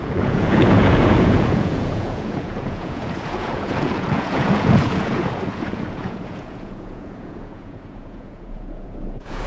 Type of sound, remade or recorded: remade